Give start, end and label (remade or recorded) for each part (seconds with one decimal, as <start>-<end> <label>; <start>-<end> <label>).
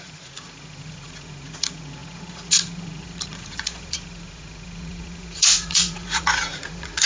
0.0-7.1 remade